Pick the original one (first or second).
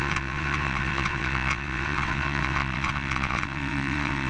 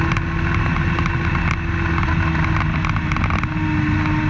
second